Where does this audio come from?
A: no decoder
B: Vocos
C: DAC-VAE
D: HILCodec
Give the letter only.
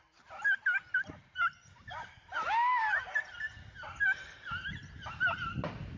A